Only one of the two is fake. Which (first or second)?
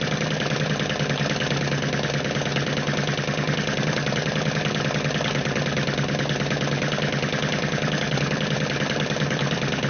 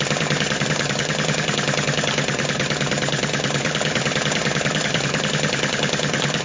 second